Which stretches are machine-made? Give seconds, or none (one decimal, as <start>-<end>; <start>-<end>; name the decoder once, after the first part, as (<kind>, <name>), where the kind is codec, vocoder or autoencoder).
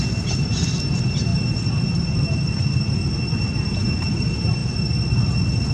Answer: none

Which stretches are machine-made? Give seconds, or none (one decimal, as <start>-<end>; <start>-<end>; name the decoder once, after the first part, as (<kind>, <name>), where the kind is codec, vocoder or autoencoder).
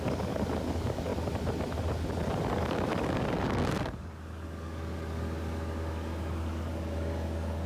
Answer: 0.0-1.1 (codec, DAC); 2.5-7.7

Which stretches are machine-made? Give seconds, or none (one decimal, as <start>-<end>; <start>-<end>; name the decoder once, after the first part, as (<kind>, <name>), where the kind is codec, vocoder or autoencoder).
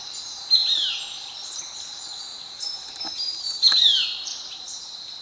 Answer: 0.6-1.6 (vocoder, BigVGAN v2); 2.3-3.4; 4.3-5.2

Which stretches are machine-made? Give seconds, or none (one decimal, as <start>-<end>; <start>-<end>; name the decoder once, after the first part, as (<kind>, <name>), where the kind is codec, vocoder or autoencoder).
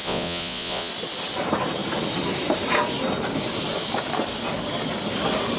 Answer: 0.0-0.9 (vocoder, Vocos)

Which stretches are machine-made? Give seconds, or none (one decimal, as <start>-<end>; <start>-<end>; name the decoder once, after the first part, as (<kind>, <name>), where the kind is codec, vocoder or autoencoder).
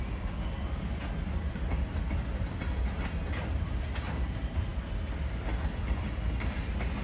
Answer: none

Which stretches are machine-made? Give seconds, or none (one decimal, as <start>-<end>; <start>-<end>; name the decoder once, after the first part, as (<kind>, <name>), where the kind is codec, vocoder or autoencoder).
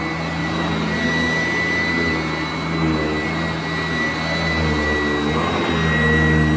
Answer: none